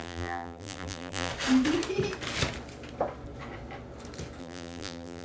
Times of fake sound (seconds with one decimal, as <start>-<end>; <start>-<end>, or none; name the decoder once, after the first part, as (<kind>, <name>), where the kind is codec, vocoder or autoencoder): 0.0-1.3 (vocoder, BigVGAN v2); 4.4-5.2